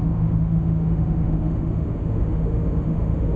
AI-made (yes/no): yes